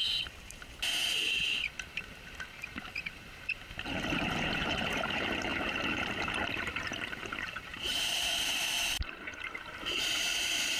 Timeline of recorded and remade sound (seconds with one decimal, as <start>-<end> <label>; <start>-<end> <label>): 0.0-10.8 remade